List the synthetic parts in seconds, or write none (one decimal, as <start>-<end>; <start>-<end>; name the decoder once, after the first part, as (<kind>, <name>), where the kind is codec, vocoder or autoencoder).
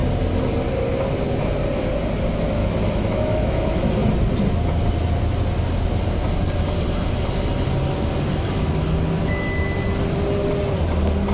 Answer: 2.6-3.9 (autoencoder, DAC-VAE)